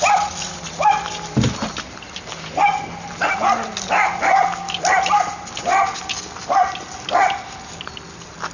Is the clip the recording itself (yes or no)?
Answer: yes